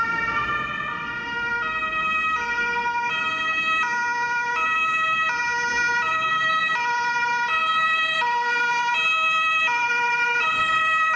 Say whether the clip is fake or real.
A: real